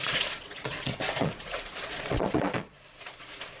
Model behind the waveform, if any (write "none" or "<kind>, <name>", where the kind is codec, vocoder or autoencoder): vocoder, Vocos